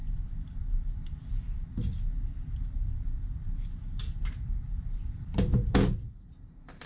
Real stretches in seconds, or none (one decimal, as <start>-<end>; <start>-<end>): 0.0-6.9